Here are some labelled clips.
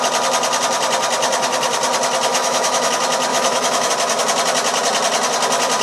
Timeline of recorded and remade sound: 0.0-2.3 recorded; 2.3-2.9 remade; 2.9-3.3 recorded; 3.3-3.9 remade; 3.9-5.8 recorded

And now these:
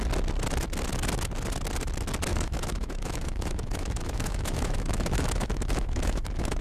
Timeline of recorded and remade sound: 0.0-2.3 recorded; 2.3-6.6 remade

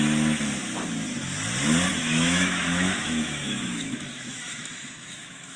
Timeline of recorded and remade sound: 0.0-1.9 recorded; 1.9-5.6 remade

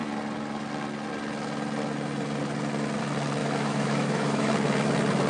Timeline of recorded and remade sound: 0.0-3.4 recorded; 3.4-4.5 remade; 4.5-5.3 recorded

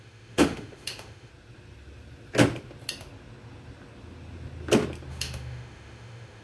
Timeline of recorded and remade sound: 0.0-1.3 remade; 1.3-5.1 recorded; 5.1-6.4 remade